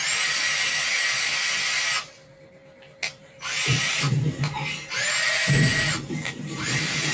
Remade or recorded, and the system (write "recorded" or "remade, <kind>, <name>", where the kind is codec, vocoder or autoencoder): recorded